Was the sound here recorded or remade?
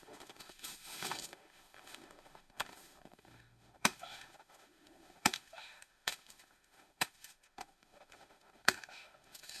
remade